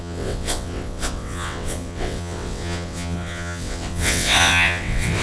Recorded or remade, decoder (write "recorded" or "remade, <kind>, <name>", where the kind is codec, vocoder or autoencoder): remade, vocoder, WaveNeXt